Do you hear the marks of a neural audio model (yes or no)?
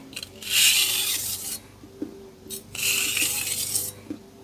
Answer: no